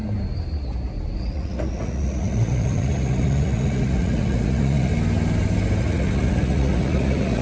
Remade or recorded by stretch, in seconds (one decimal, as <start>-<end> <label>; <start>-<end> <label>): 0.0-1.2 recorded; 1.2-4.9 remade; 4.9-5.8 recorded; 5.8-7.4 remade